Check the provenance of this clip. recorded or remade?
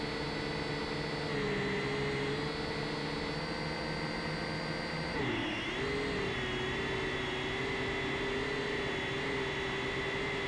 recorded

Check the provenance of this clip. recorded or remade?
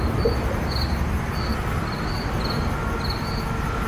recorded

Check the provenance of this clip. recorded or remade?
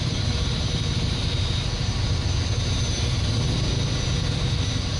recorded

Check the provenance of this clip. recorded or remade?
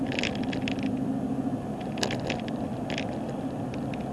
recorded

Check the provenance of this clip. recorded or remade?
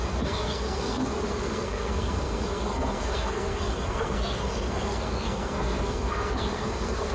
remade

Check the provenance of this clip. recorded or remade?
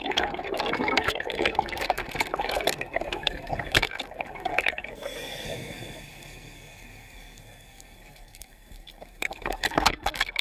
remade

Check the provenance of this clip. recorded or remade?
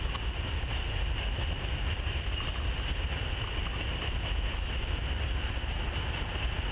recorded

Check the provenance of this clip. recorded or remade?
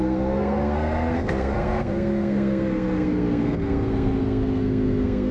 remade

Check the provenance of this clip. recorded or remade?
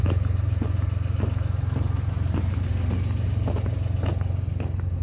recorded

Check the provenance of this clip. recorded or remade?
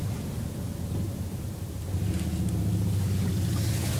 recorded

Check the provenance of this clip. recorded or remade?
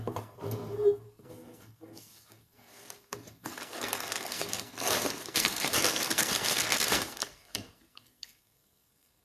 remade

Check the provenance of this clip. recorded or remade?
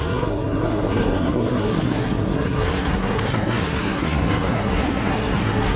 remade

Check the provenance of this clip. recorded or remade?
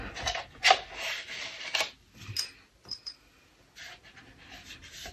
recorded